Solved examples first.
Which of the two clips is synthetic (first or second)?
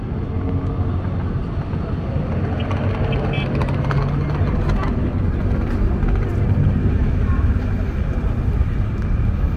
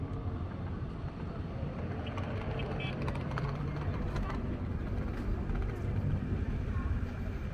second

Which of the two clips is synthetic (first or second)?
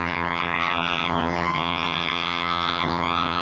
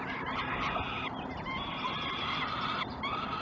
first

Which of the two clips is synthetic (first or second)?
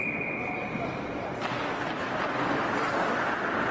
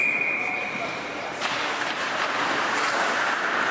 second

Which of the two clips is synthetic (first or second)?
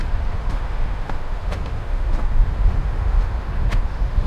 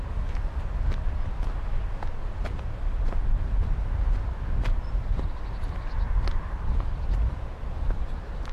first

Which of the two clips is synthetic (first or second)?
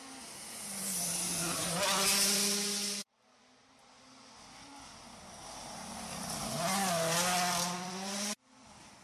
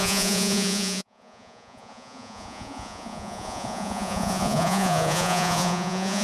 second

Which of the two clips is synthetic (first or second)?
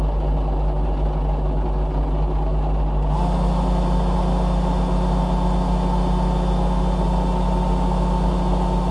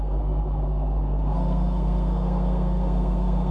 second